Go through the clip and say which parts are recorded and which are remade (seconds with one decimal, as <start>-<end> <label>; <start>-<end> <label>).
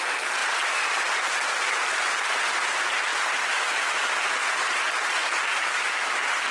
0.0-3.4 recorded; 3.4-4.1 remade; 4.1-5.5 recorded; 5.5-6.1 remade; 6.1-6.5 recorded